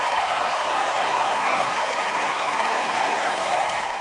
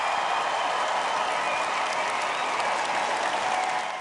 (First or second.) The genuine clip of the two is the second